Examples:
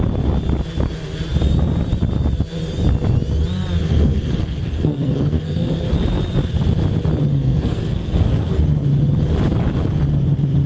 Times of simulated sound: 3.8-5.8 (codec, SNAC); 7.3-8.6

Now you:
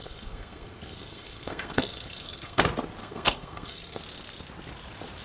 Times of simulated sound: 0.0-2.6 (codec, SNAC); 3.0-4.0

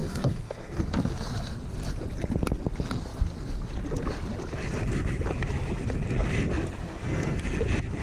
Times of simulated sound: 0.0-0.8 (codec, SNAC); 6.8-7.6

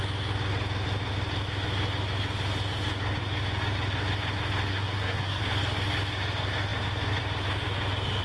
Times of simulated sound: 4.7-5.4 (codec, SNAC)